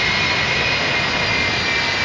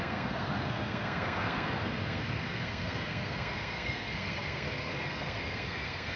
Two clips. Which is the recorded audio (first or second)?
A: first